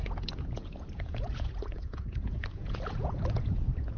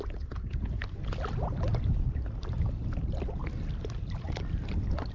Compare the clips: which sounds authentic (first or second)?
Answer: second